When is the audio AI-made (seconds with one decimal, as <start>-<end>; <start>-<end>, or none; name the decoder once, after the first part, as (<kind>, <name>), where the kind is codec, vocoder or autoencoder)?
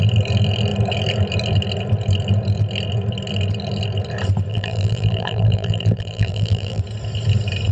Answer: 4.5-6.8 (vocoder, BigVGAN v2)